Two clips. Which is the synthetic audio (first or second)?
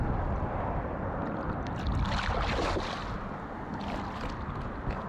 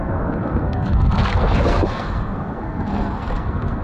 second